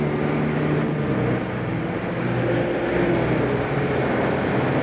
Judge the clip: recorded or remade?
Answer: recorded